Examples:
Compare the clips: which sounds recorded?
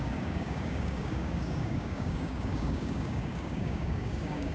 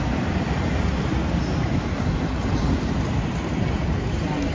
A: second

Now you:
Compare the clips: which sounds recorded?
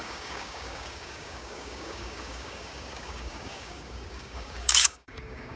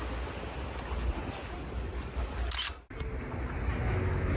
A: second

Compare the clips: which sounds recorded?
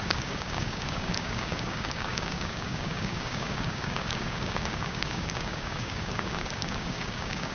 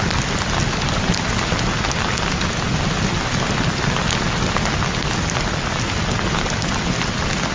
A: second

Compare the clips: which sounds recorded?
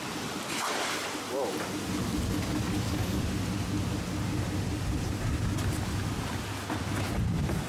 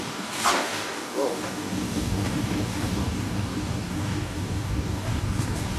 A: first